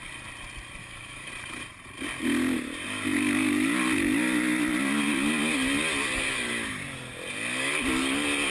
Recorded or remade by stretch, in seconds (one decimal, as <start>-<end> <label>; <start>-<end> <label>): 0.0-0.8 recorded; 0.8-1.3 remade; 1.3-8.5 recorded